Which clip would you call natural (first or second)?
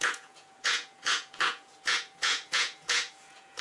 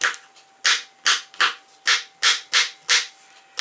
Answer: second